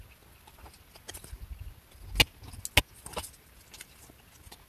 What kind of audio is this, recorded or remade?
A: recorded